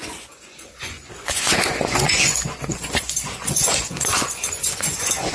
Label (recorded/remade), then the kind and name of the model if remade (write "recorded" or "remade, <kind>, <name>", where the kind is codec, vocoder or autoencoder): remade, vocoder, Vocos